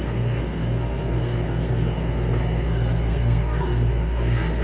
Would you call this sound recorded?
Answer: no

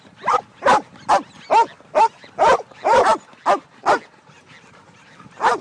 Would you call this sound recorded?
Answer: yes